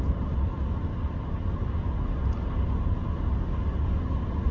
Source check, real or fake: real